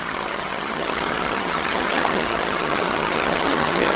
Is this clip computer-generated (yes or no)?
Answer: yes